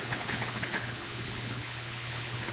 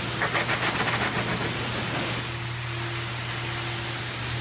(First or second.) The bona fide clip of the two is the second